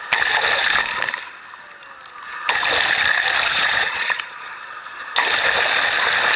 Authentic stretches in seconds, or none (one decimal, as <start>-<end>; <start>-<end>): 0.0-3.5; 4.6-6.4